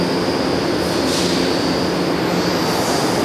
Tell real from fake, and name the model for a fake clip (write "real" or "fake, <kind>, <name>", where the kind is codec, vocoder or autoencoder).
real